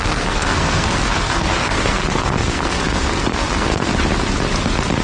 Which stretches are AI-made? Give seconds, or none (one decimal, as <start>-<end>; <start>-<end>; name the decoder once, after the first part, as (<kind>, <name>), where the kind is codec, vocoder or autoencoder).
0.0-3.9 (codec, SNAC)